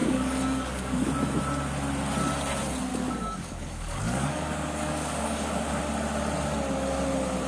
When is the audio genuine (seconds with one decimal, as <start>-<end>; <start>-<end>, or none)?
1.1-2.9; 5.8-7.5